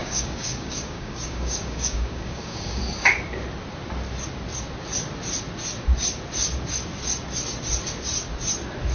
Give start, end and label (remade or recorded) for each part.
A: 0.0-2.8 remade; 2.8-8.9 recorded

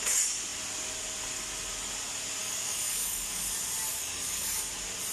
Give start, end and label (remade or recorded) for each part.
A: 0.0-2.4 recorded; 2.4-3.4 remade; 3.4-3.9 recorded; 3.9-4.6 remade; 4.6-5.1 recorded

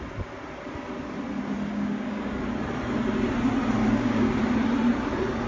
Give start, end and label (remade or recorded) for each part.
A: 0.0-1.7 recorded; 1.7-2.4 remade; 2.4-3.8 recorded; 3.8-4.4 remade; 4.4-5.5 recorded